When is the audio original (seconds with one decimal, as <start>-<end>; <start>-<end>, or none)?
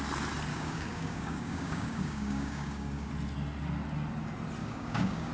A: 0.0-0.5; 3.1-4.6